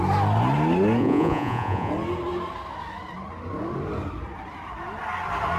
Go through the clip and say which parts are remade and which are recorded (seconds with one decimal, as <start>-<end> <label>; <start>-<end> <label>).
0.0-1.0 recorded; 1.0-1.9 remade; 1.9-5.6 recorded